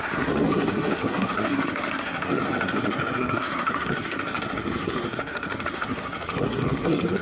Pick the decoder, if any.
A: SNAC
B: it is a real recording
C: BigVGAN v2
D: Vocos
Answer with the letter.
A